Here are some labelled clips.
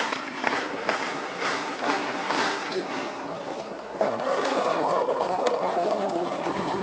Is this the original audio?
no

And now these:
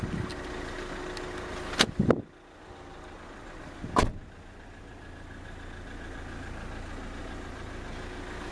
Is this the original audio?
yes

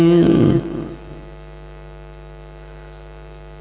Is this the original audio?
no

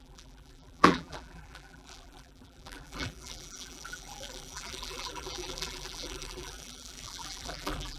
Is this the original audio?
no